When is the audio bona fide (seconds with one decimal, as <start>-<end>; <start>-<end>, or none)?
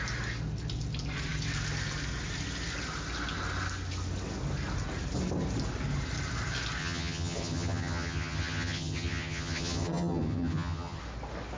0.0-6.8; 11.0-11.6